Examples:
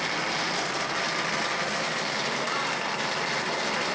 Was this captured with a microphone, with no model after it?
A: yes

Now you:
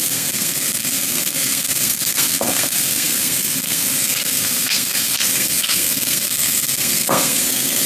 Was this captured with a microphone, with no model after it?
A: no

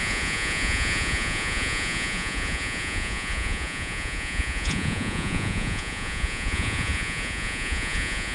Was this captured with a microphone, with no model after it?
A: no